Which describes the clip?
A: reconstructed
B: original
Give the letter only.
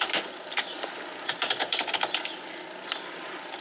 B